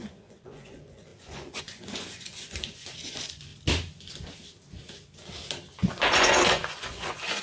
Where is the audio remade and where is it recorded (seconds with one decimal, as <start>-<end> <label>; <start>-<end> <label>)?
0.0-3.5 remade; 3.5-5.9 recorded; 5.9-7.4 remade